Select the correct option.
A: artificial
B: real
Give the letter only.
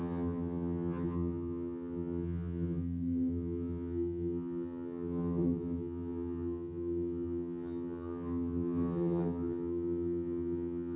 A